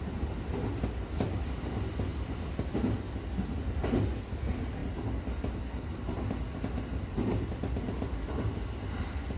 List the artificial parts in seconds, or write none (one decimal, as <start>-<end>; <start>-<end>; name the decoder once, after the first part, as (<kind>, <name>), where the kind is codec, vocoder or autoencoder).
none